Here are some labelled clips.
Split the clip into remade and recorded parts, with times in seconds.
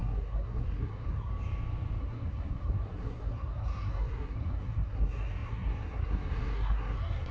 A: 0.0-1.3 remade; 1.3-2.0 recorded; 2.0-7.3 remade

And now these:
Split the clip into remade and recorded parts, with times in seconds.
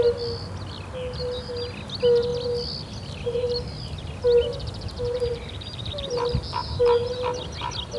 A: 0.0-8.0 recorded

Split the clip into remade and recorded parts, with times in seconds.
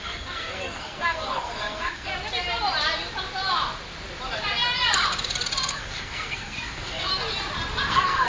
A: 0.0-2.1 remade; 2.1-5.7 recorded; 5.7-7.1 remade; 7.1-7.9 recorded; 7.9-8.3 remade